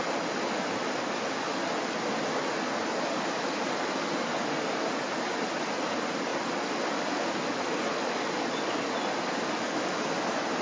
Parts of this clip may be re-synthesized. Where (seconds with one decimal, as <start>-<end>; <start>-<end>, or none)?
none